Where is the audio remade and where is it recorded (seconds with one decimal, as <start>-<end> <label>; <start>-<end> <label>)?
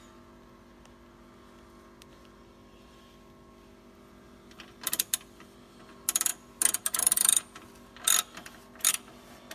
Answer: 0.0-9.5 recorded